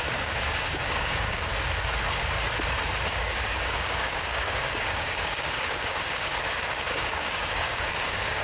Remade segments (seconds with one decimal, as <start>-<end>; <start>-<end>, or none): 0.0-1.5; 3.1-8.4